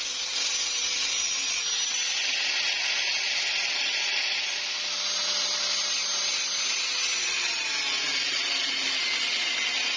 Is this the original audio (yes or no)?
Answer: yes